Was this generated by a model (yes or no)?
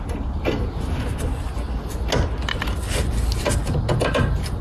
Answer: no